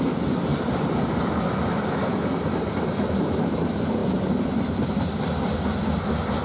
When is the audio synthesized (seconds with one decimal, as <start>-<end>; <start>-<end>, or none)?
none